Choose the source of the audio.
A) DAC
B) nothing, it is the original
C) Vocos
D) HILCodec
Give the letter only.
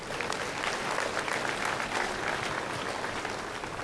B